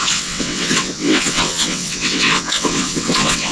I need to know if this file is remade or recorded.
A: remade